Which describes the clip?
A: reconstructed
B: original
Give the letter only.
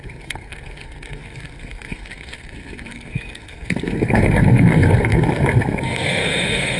A